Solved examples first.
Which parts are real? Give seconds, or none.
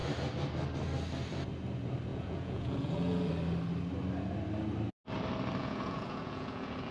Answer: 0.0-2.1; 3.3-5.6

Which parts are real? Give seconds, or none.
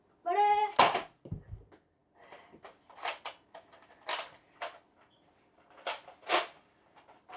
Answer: 0.0-7.4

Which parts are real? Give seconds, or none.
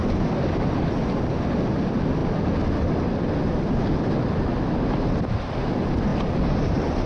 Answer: 0.0-7.1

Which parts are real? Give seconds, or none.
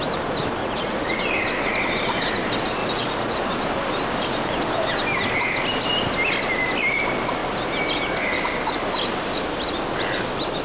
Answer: 0.0-0.6; 1.2-2.8; 3.4-10.6